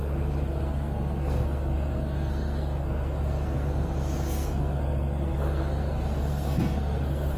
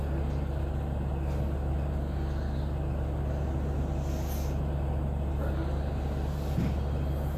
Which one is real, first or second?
second